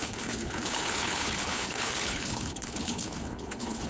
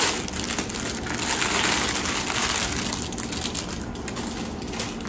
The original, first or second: second